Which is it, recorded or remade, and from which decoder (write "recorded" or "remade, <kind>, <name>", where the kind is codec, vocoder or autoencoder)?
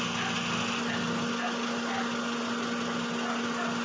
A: recorded